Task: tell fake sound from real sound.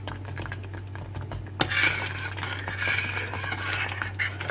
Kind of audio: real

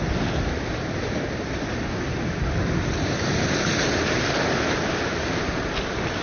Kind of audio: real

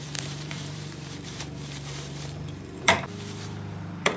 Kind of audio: fake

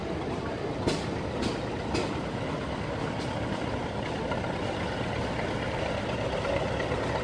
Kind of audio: real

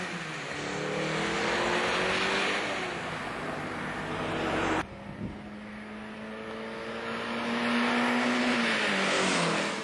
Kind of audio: real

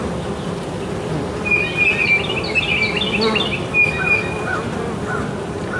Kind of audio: real